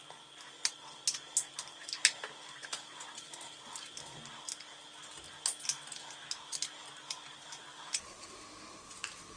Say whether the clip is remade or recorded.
recorded